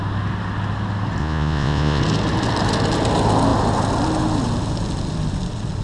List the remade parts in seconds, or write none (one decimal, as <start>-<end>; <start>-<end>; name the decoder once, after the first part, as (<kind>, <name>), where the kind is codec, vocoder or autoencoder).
1.2-2.0 (vocoder, Vocos)

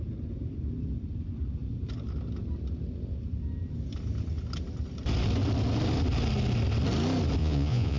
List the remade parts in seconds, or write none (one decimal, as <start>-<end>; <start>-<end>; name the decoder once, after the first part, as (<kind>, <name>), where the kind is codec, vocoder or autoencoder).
7.4-8.0 (vocoder, Vocos)

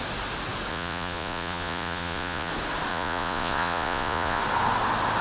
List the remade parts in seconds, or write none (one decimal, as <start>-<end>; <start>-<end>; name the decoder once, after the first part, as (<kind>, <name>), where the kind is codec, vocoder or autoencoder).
0.7-2.5 (vocoder, Vocos); 2.9-4.4

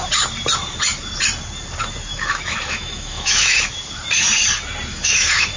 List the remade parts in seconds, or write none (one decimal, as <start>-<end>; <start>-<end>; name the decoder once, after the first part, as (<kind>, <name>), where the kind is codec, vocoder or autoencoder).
2.1-3.7 (autoencoder, DAC-VAE); 4.9-5.6

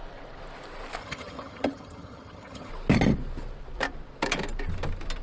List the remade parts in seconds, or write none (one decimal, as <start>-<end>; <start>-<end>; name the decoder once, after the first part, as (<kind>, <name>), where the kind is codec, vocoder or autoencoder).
1.0-2.7 (vocoder, HiFi-GAN)